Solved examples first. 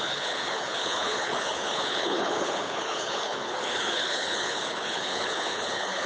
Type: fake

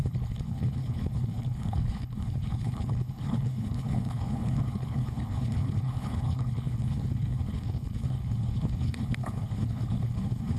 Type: fake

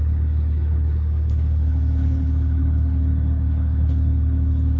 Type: fake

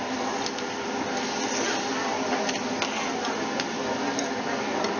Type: real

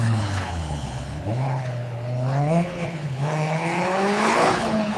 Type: fake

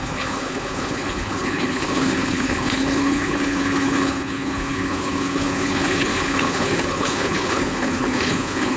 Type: fake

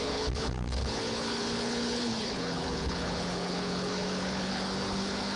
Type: fake